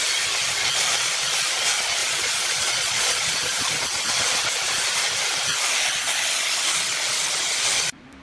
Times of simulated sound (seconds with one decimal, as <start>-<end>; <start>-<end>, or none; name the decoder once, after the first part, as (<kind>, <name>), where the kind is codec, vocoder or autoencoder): 2.0-3.3 (vocoder, Vocos)